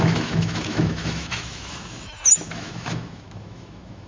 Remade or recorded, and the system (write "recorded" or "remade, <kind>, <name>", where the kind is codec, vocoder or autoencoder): remade, autoencoder, DAC-VAE